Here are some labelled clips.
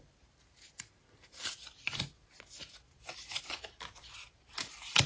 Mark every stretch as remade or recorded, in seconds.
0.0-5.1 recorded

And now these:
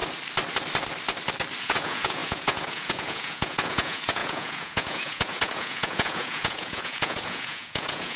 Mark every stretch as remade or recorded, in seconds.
0.0-1.6 recorded; 1.6-8.2 remade

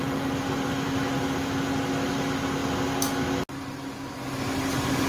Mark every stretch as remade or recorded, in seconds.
0.0-5.1 recorded